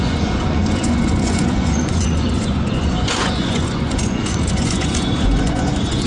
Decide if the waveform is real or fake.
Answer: fake